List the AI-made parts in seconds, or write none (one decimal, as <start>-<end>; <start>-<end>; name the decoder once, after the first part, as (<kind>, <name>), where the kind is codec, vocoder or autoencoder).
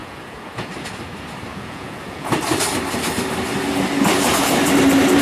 0.0-0.7 (vocoder, Vocos); 1.5-2.3